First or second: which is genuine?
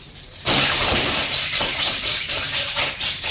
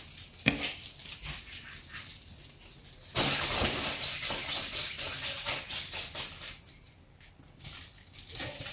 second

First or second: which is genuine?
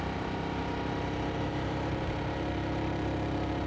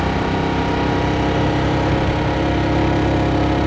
second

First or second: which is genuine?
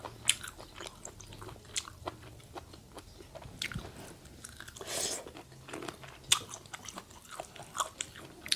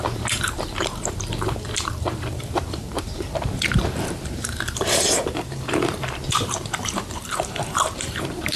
first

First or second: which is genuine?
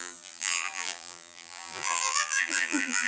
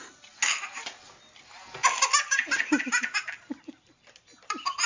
second